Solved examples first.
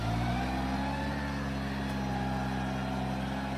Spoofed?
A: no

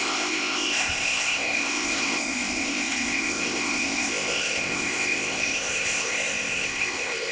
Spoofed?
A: yes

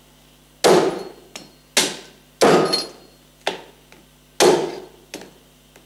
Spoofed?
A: no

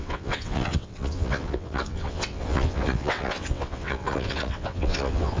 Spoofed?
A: yes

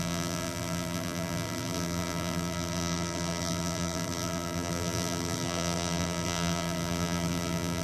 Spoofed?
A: yes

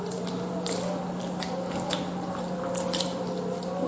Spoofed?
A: no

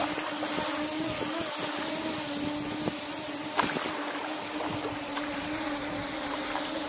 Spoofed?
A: no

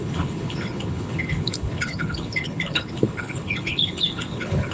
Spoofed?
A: yes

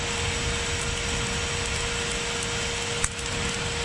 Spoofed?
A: no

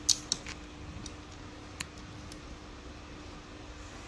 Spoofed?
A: no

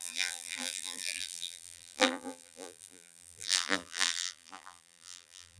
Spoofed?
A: yes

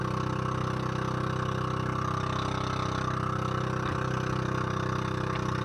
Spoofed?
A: no